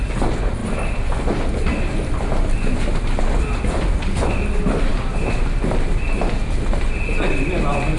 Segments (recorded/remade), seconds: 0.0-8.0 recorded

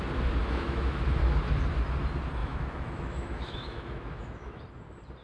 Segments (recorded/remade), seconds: 0.0-0.4 recorded; 0.4-1.0 remade; 1.0-2.4 recorded; 2.4-4.6 remade; 4.6-5.2 recorded

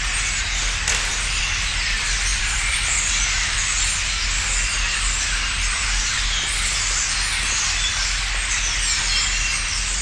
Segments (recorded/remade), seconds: 0.0-2.3 recorded; 2.3-3.6 remade; 3.6-10.0 recorded

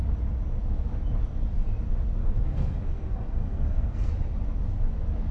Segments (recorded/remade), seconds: 0.0-2.2 recorded; 2.2-4.1 remade; 4.1-5.3 recorded

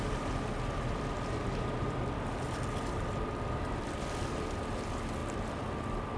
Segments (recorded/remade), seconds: 0.0-6.2 recorded

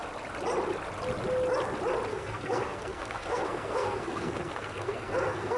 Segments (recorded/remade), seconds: 0.0-2.1 recorded; 2.1-5.6 remade

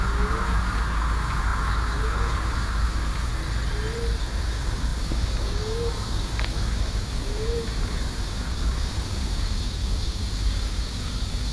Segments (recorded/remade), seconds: 0.0-3.3 remade; 3.3-4.2 recorded; 4.2-11.5 remade